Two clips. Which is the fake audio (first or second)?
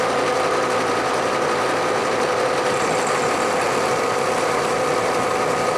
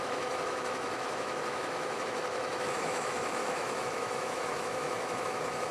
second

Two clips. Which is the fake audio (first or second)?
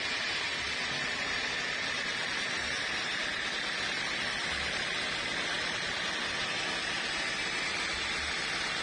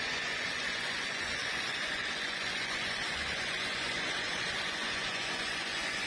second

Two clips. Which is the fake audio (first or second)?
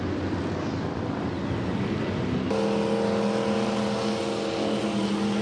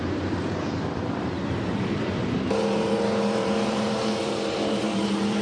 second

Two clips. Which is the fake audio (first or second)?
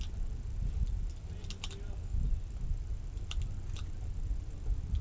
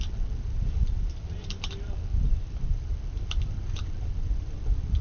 second